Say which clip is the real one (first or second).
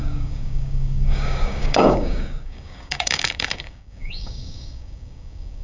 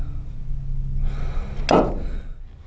second